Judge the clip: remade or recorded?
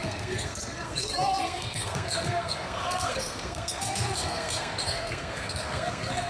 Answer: remade